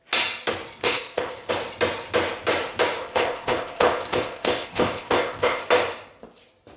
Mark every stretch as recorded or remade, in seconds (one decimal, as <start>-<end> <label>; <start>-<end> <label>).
0.0-0.8 recorded; 0.8-1.5 remade; 1.5-3.0 recorded; 3.0-5.6 remade; 5.6-6.8 recorded